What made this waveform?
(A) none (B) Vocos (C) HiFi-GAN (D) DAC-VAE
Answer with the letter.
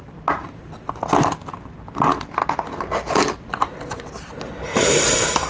A